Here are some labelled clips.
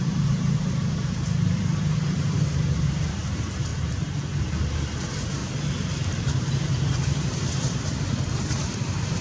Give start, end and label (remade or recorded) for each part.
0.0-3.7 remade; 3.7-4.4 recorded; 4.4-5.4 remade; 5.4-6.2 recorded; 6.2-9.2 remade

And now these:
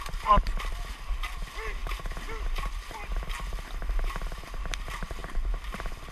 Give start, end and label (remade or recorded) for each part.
0.0-5.2 recorded; 5.2-6.1 remade

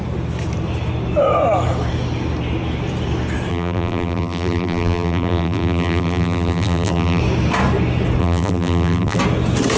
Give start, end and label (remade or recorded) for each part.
0.0-3.5 recorded; 3.5-7.2 remade; 7.2-8.2 recorded; 8.2-9.2 remade; 9.2-9.8 recorded